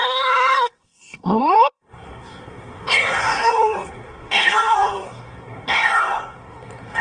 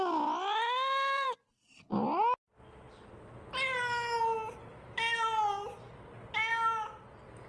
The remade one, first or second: first